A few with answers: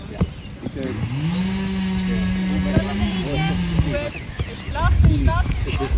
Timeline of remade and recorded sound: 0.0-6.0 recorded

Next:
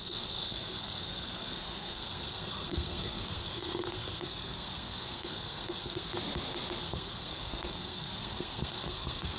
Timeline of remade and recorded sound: 0.0-6.1 remade; 6.1-6.8 recorded; 6.8-9.4 remade

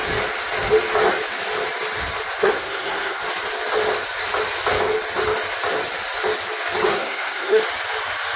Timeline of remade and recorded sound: 0.0-2.4 recorded; 2.4-3.2 remade; 3.2-6.9 recorded; 6.9-7.6 remade; 7.6-8.4 recorded